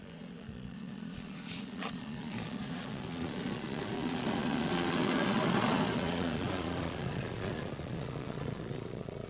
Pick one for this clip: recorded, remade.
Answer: remade